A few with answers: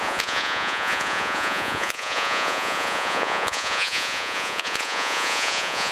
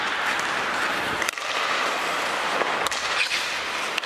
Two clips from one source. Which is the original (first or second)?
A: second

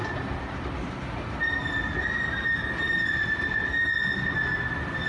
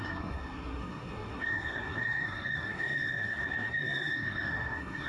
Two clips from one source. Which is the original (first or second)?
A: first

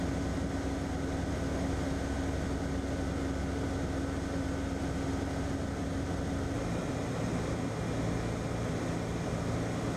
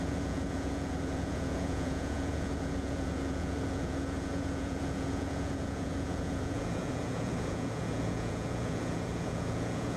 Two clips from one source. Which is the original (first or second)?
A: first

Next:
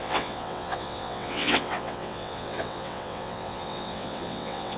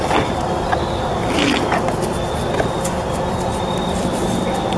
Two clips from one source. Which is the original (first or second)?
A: second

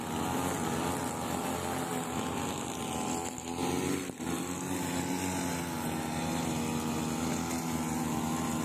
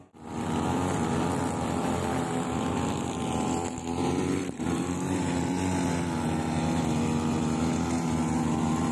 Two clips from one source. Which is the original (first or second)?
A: first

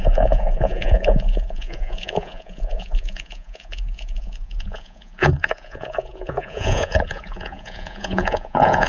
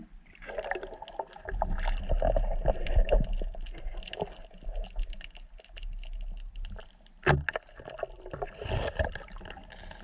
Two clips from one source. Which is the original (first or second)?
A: second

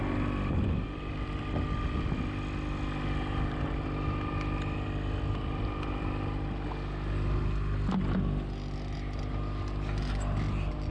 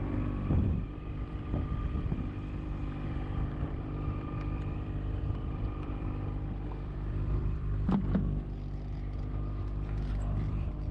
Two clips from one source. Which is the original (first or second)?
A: first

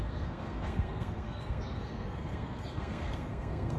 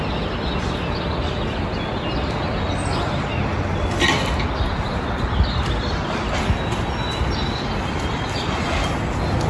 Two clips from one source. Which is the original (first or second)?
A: second